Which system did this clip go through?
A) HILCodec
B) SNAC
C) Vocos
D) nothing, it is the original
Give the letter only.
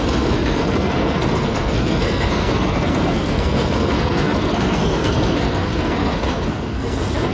B